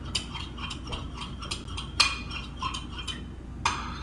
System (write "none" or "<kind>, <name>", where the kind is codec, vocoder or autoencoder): none